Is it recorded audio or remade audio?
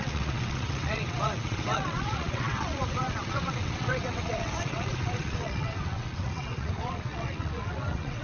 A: remade